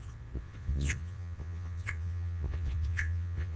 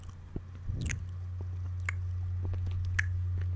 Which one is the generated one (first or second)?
first